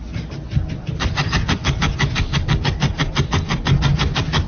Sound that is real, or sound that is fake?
real